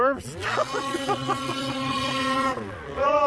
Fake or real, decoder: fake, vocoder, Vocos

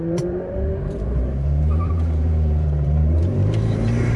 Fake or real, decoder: fake, vocoder, BigVGAN v2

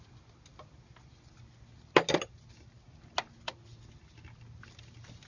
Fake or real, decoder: real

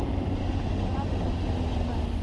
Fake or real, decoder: real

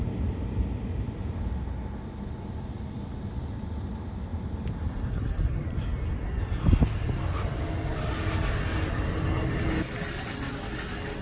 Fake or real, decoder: real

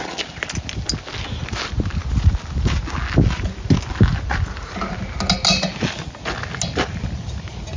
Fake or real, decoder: real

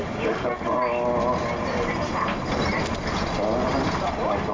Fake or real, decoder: real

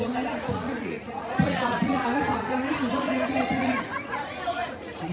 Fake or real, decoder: fake, vocoder, Vocos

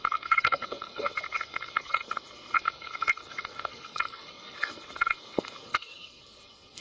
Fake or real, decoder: fake, codec, SNAC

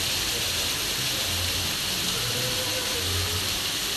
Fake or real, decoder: real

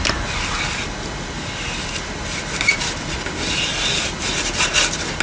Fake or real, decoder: real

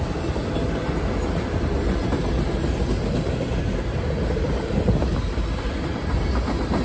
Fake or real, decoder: real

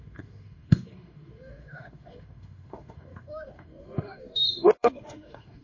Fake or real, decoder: fake, autoencoder, DAC-VAE